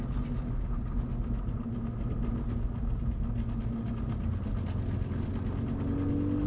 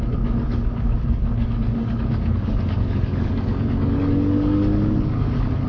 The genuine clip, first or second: first